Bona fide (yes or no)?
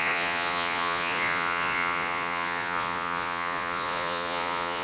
no